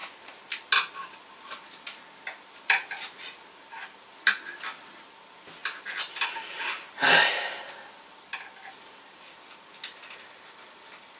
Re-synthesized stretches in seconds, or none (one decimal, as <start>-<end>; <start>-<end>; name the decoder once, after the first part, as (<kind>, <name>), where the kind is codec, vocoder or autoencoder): none